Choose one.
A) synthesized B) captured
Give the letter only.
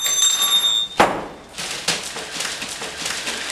B